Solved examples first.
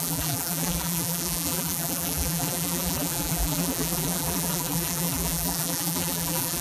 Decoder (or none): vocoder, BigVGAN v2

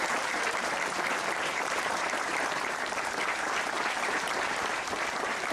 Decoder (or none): vocoder, BigVGAN v2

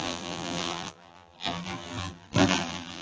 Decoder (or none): vocoder, BigVGAN v2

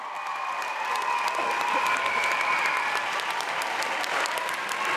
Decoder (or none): none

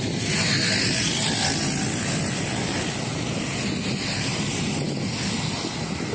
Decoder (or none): none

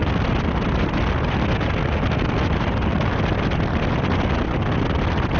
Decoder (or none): none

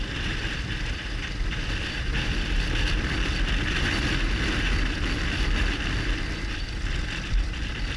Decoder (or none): vocoder, BigVGAN v2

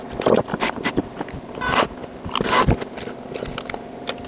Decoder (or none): none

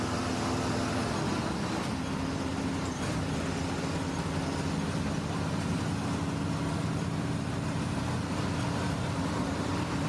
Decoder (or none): none